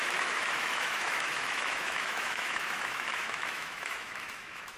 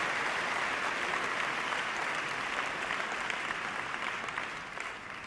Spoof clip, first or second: first